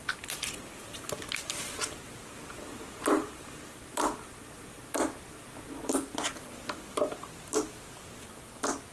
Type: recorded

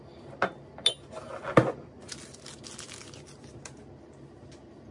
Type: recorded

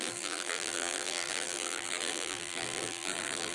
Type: remade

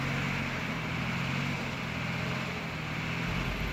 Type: recorded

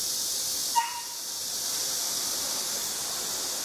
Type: remade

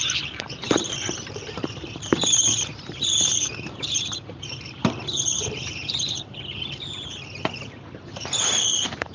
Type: remade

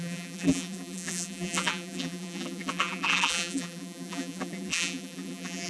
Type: remade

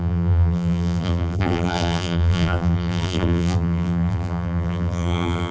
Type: remade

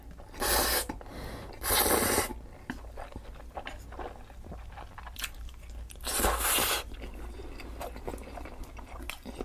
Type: recorded